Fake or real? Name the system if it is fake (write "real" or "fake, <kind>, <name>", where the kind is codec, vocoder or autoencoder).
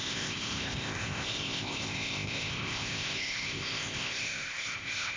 fake, codec, ZipCodec